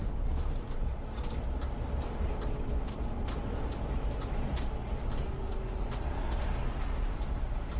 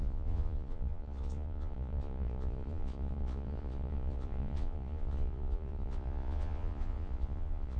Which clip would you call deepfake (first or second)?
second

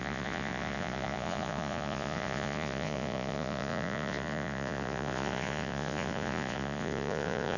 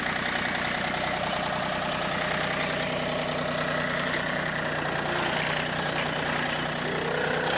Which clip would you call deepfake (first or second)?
first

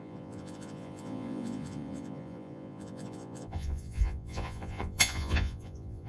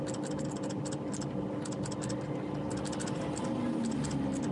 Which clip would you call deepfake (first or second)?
first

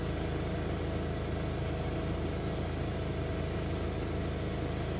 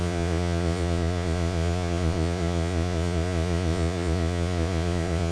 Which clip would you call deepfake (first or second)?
second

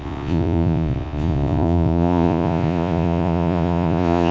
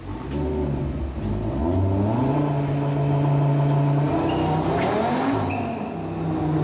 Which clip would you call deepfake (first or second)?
first